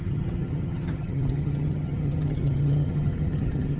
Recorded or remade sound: remade